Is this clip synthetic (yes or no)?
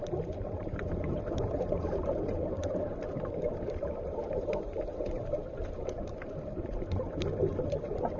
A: yes